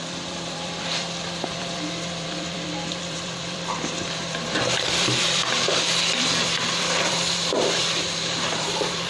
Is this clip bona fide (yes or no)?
no